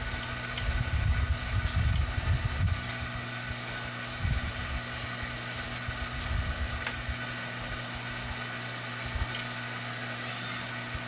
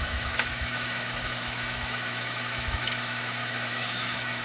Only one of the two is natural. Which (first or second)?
first